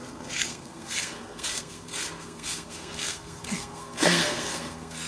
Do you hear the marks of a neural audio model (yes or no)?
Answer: yes